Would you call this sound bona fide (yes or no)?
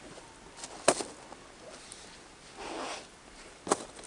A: yes